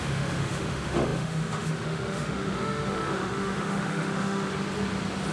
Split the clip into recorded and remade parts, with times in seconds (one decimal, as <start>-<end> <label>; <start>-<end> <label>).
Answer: 0.0-4.5 remade; 4.5-5.3 recorded